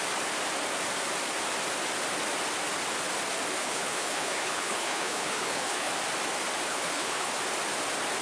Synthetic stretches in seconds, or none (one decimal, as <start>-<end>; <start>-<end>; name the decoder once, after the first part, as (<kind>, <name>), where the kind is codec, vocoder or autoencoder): 3.6-5.9 (codec, HILCodec); 6.7-7.3